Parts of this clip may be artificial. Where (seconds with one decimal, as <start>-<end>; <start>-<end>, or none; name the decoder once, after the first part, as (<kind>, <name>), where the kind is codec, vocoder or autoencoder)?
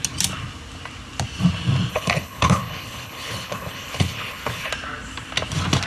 1.9-4.7 (codec, HILCodec)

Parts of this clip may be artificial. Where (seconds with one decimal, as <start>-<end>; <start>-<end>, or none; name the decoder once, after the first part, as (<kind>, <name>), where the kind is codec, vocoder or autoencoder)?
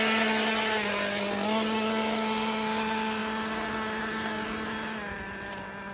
none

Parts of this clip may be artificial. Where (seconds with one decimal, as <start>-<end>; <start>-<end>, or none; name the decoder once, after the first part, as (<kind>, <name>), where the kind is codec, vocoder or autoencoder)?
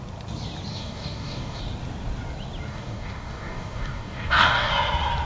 0.7-1.6 (codec, DAC); 2.7-4.7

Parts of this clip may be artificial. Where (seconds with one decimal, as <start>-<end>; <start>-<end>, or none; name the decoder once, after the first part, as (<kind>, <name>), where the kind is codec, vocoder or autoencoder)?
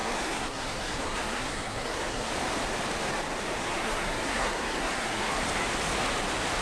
0.0-2.3 (codec, SNAC); 3.6-5.3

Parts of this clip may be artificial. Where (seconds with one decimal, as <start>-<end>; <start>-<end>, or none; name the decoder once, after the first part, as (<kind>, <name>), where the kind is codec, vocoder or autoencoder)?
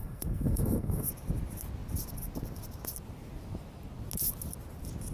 0.0-1.1 (codec, SNAC)